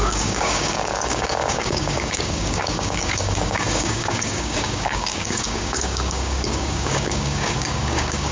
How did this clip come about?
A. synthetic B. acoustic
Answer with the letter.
A